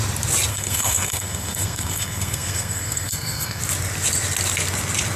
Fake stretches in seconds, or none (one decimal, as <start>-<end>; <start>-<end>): 0.5-3.6